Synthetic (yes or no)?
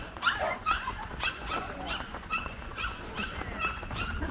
yes